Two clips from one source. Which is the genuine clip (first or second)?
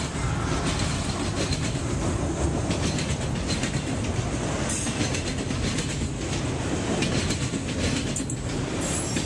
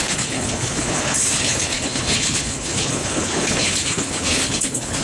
first